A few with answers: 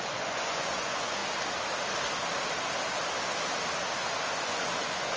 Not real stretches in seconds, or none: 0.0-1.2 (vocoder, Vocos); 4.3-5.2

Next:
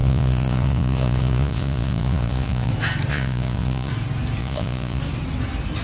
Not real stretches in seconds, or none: 0.0-2.7 (vocoder, Vocos); 3.1-3.9; 4.4-5.0

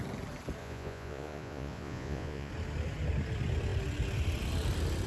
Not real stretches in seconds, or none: 0.6-2.5 (vocoder, Vocos)

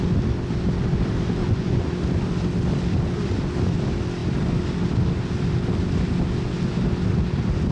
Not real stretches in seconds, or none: 1.4-1.9 (vocoder, Vocos)

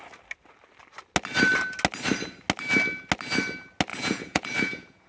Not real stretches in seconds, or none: 3.9-5.1 (vocoder, Vocos)

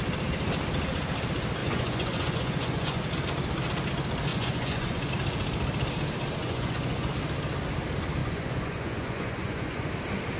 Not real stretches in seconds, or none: 1.6-3.0 (vocoder, Vocos); 4.3-5.1; 6.4-7.1; 8.2-9.9